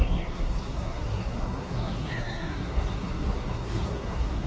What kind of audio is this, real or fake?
fake